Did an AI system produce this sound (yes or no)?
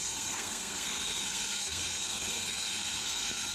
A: yes